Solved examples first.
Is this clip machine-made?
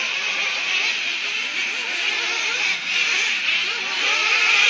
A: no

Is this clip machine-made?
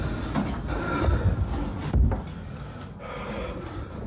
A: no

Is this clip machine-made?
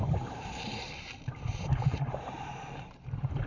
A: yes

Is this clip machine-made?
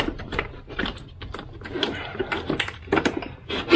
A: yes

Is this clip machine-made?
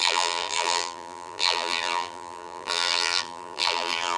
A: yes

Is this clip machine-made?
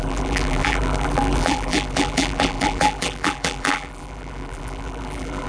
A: yes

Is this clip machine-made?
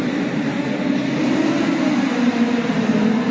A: no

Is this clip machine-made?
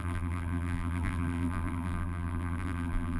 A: yes